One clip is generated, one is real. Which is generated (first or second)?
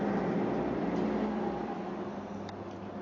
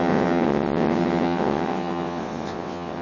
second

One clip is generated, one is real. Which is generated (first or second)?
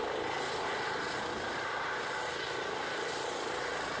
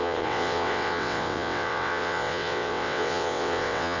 second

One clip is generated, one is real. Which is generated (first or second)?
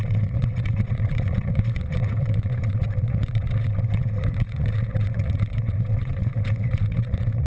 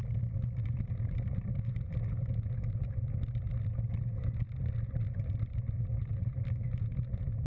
first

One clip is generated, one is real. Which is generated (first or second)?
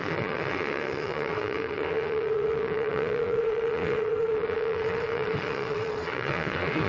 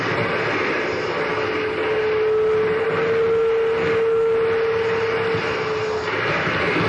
first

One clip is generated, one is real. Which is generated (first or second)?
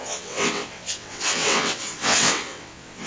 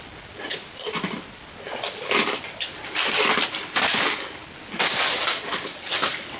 first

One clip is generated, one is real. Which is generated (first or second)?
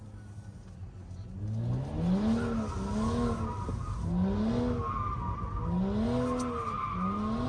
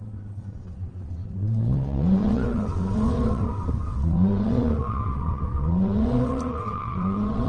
second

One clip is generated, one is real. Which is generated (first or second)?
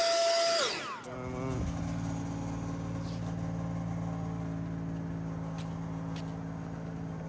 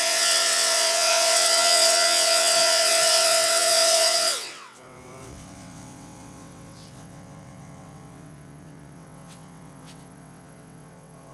second